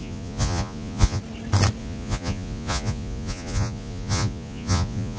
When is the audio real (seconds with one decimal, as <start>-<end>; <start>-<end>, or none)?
1.2-1.8